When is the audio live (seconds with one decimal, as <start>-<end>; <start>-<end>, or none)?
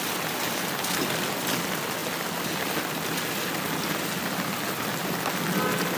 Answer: 0.0-6.0